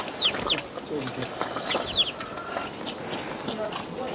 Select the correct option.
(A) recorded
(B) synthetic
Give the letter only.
A